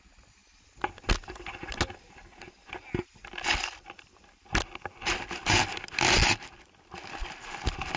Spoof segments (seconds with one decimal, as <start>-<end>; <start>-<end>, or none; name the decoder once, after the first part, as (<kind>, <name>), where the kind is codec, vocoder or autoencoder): none